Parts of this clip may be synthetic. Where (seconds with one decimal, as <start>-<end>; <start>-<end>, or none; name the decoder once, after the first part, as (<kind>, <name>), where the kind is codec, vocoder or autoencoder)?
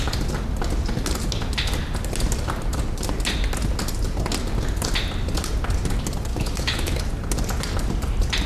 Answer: 6.3-7.0 (autoencoder, DAC-VAE)